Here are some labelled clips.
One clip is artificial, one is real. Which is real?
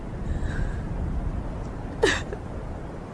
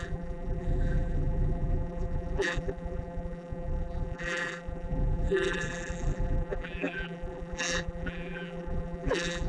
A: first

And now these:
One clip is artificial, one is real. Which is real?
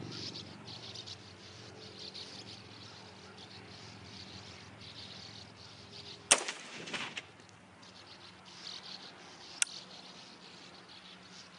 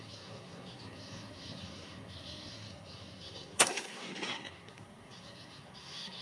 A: first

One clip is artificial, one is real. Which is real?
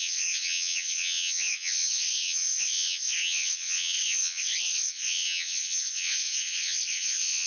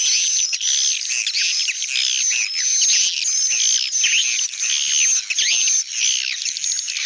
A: second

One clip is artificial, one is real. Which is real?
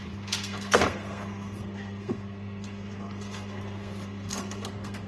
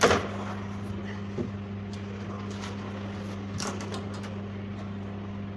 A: second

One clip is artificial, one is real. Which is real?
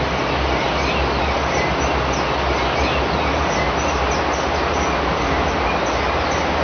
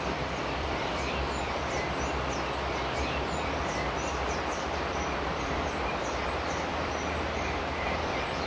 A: first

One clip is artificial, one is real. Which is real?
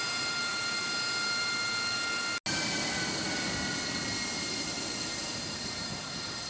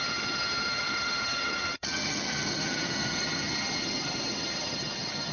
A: first